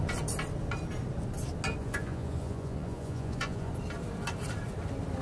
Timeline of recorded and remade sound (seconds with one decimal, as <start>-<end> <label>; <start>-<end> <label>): 0.0-1.8 recorded; 1.8-3.7 remade; 3.7-5.2 recorded